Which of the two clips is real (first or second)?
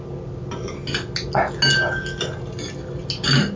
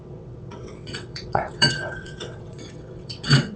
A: first